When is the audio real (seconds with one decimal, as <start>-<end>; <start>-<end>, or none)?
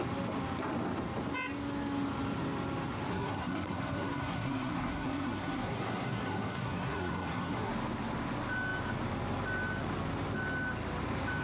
0.0-3.1; 7.7-11.4